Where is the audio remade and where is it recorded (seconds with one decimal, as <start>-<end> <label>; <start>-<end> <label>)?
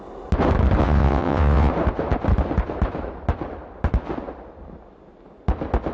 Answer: 0.0-0.8 recorded; 0.8-1.7 remade; 1.7-5.9 recorded